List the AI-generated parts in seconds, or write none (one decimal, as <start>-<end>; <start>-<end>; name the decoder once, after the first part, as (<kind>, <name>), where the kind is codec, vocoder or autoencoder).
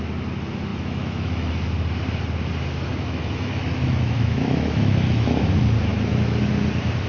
0.7-1.5 (autoencoder, DAC-VAE); 2.9-5.4; 5.9-6.5